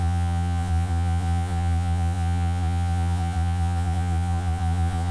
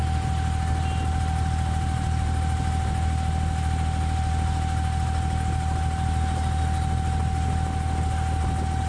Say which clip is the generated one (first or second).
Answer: first